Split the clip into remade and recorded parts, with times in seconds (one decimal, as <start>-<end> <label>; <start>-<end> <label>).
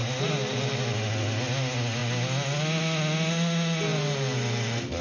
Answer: 0.0-0.7 remade; 0.7-3.9 recorded; 3.9-5.0 remade